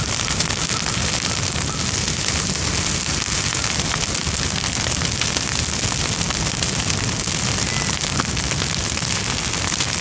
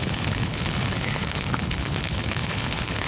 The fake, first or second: second